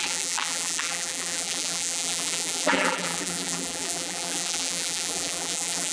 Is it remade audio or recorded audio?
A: remade